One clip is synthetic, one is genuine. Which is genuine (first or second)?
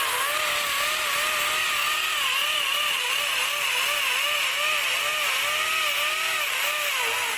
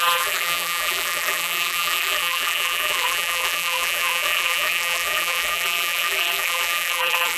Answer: first